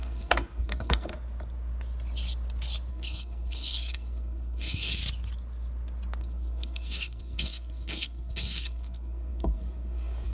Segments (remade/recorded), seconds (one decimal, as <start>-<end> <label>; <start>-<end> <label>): 0.0-1.1 remade; 1.1-2.9 recorded; 2.9-5.0 remade; 5.0-6.2 recorded; 6.2-10.3 remade